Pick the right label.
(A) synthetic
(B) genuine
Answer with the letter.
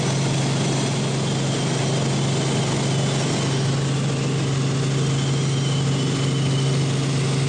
B